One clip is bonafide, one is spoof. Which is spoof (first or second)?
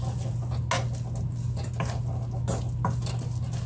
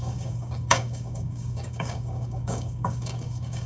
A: second